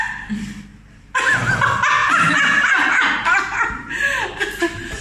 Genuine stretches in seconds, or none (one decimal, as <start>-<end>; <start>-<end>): 0.0-0.7; 1.5-2.0